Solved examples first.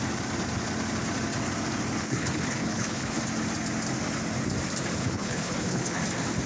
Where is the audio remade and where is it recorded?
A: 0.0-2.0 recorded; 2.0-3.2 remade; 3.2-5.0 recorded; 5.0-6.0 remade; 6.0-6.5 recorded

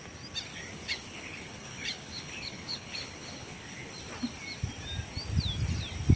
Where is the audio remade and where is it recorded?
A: 0.0-0.5 recorded; 0.5-3.9 remade; 3.9-6.2 recorded

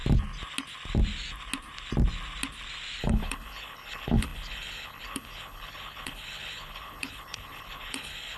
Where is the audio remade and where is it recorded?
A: 0.0-3.0 recorded; 3.0-8.4 remade

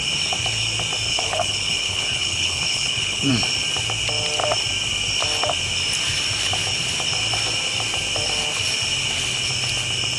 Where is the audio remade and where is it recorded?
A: 0.0-1.1 recorded; 1.1-3.3 remade; 3.3-10.2 recorded